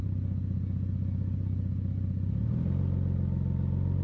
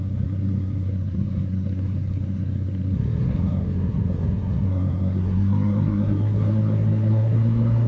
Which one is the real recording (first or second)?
first